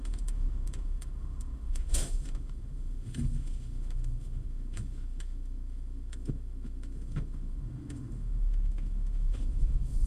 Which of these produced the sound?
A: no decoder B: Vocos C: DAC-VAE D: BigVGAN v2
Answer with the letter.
C